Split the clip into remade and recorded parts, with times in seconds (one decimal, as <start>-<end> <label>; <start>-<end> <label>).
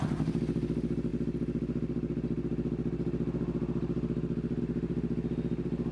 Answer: 0.0-5.9 recorded